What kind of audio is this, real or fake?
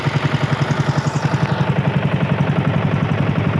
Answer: real